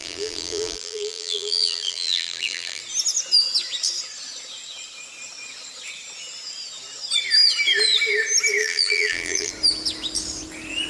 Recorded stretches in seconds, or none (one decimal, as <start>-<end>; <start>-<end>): 2.8-8.6; 9.5-10.9